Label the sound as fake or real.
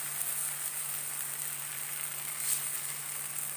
real